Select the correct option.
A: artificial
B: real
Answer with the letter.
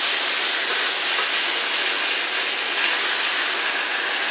B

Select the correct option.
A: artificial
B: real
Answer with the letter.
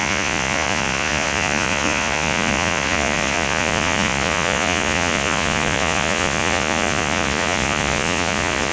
A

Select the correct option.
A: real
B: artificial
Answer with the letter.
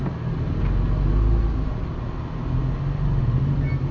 A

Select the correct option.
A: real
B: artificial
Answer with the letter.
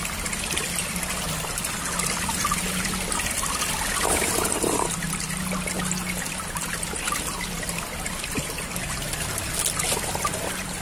A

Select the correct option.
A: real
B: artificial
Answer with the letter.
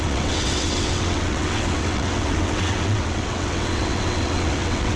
B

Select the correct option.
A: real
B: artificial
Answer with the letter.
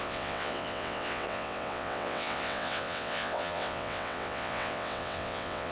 B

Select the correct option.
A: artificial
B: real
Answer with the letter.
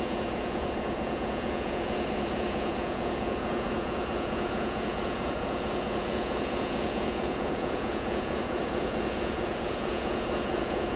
A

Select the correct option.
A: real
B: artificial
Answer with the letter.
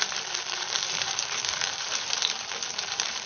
B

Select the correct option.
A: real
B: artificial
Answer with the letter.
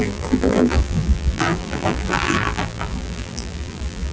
B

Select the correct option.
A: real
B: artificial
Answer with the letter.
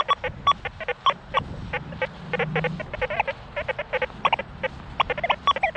A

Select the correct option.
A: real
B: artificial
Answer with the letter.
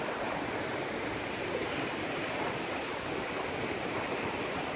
A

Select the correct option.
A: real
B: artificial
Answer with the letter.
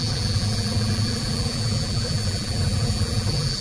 B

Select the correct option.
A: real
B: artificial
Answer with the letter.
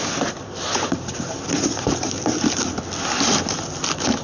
A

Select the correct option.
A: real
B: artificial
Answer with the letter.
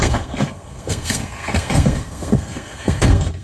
B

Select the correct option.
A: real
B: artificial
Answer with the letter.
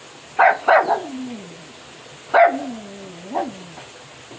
A